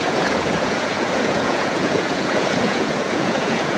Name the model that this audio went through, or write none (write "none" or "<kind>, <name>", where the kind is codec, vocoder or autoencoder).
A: vocoder, Vocos